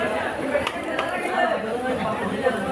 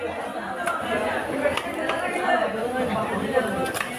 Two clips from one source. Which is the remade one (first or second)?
first